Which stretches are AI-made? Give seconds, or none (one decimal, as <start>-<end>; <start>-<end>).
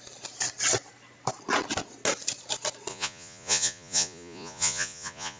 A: 2.9-5.4